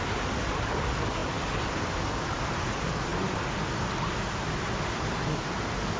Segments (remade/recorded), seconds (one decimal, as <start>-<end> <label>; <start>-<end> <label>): 0.0-6.0 recorded

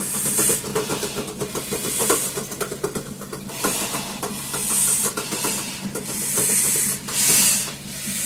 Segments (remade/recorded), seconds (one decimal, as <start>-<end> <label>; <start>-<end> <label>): 0.0-8.3 remade

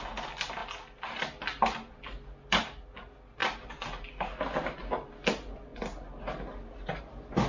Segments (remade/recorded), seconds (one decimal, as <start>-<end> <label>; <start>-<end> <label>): 0.0-7.5 recorded

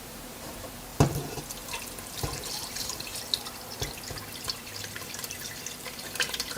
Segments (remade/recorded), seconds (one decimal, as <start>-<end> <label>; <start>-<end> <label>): 0.0-0.9 remade; 0.9-2.0 recorded; 2.0-3.1 remade; 3.1-4.8 recorded; 4.8-6.6 remade

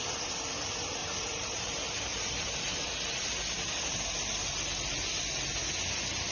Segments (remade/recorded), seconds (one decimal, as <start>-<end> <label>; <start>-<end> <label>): 0.0-1.0 recorded; 1.0-2.7 remade; 2.7-6.3 recorded

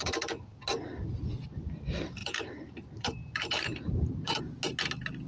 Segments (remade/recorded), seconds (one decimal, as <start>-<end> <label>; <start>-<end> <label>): 0.0-2.2 recorded; 2.2-4.4 remade; 4.4-5.3 recorded

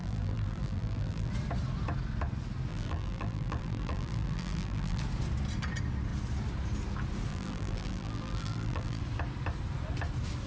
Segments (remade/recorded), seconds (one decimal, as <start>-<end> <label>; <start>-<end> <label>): 0.0-1.3 remade; 1.3-2.7 recorded; 2.7-5.0 remade; 5.0-7.3 recorded; 7.3-9.0 remade; 9.0-10.5 recorded

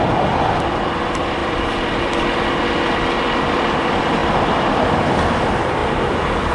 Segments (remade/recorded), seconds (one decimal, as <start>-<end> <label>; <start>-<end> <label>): 0.0-1.4 remade; 1.4-3.4 recorded; 3.4-6.5 remade